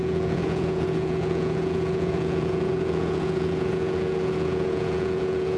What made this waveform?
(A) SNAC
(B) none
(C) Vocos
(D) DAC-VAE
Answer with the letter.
C